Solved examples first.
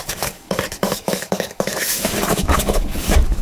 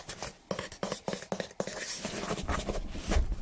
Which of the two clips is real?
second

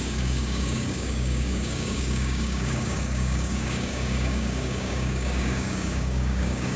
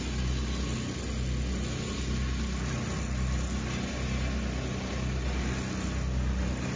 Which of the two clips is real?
second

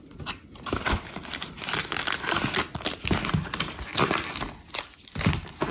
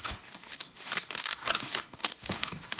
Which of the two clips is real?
first